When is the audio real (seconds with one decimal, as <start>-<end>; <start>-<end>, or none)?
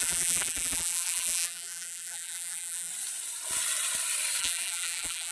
2.9-4.4